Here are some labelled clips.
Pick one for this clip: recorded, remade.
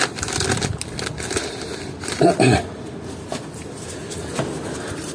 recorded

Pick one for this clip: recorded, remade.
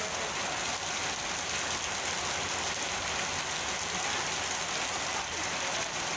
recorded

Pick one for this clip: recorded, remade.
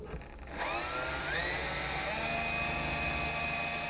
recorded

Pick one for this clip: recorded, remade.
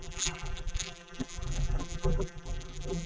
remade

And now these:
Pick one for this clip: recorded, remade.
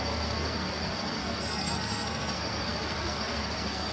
remade